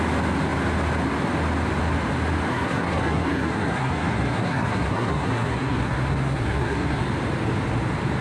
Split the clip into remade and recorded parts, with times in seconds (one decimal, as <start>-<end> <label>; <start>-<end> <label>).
0.0-2.5 recorded; 2.5-7.0 remade; 7.0-8.2 recorded